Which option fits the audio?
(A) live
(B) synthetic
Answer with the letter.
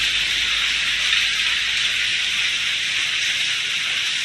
A